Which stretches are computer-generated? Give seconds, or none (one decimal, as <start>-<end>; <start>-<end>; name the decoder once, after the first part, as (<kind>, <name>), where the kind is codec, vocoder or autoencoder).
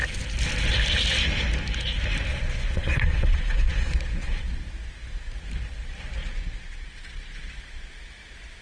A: 2.3-4.4 (vocoder, Vocos); 6.2-7.5